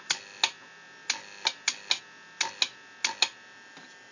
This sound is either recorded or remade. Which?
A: recorded